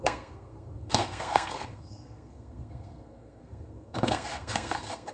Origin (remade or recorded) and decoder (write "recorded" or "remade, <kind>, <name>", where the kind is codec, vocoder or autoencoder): remade, codec, SNAC